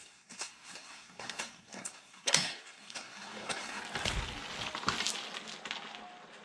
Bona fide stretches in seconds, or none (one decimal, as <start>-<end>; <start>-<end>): 3.8-6.4